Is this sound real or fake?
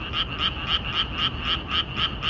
real